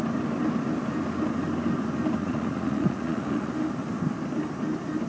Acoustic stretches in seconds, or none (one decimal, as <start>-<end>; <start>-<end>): 0.0-2.2; 3.5-5.1